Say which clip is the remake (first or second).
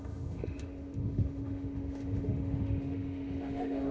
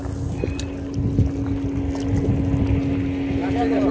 first